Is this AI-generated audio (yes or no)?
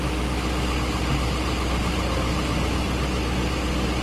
no